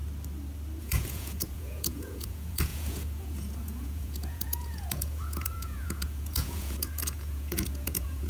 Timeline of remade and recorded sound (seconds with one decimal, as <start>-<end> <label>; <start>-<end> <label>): 0.0-0.8 recorded; 0.8-8.3 remade